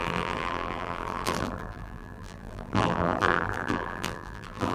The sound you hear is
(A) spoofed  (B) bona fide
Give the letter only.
A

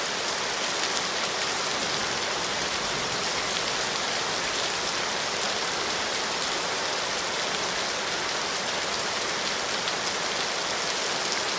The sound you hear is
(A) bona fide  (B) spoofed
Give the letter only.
A